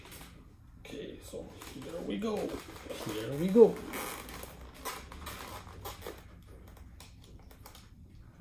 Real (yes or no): yes